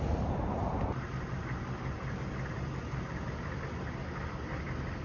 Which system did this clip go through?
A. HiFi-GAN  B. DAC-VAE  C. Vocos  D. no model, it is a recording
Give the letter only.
D